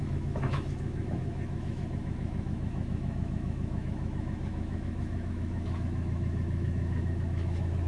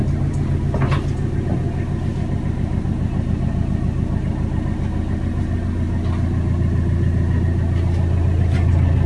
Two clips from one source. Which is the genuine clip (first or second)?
second